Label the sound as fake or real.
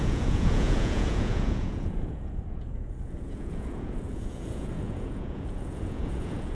fake